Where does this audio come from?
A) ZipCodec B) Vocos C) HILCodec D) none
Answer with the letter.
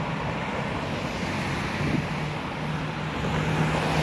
D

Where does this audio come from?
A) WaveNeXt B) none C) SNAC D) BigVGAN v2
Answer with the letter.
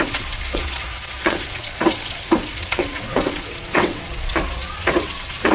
A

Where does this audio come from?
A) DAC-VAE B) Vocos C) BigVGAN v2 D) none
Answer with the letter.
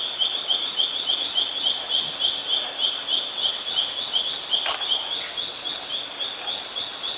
D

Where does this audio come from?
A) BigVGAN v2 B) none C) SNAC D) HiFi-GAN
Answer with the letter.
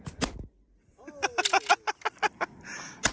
B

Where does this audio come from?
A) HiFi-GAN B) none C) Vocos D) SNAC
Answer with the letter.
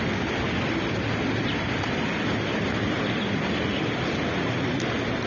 B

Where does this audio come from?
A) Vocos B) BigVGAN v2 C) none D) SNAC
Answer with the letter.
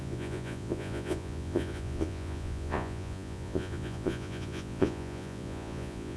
A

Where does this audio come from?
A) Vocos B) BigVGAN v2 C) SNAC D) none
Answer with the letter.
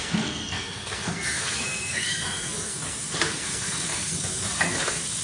C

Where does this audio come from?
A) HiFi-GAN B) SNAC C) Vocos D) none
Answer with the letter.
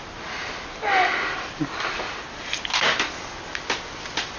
D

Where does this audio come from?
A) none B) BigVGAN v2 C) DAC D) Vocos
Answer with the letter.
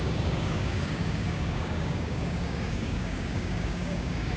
C